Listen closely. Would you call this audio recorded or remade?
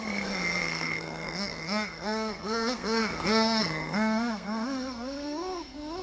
remade